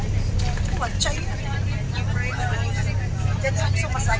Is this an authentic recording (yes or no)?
yes